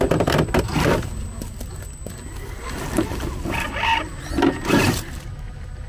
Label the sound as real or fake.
real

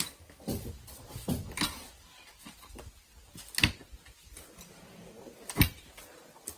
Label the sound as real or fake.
real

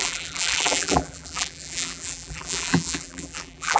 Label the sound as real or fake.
fake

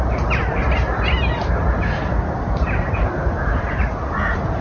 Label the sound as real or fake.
fake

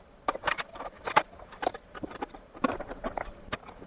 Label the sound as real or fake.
fake